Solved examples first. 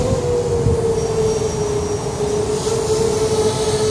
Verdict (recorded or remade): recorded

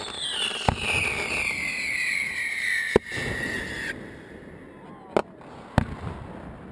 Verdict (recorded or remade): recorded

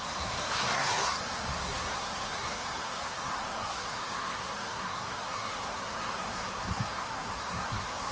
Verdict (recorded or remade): remade